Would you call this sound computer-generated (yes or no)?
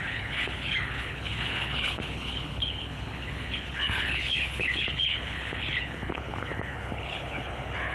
yes